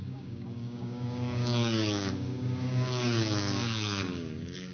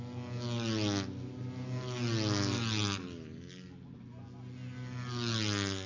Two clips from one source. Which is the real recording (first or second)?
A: second